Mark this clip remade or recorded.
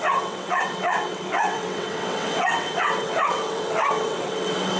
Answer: remade